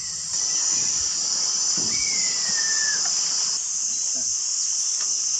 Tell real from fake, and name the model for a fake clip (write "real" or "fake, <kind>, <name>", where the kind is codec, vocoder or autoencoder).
real